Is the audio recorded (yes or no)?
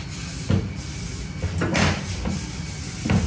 yes